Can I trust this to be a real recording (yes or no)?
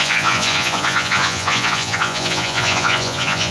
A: no